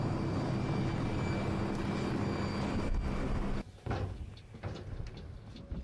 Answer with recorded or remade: recorded